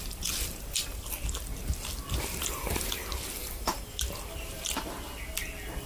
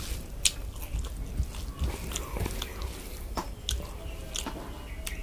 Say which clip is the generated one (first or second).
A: first